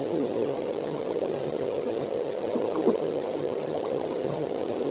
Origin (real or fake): fake